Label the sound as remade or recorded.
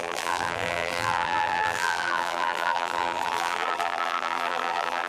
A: remade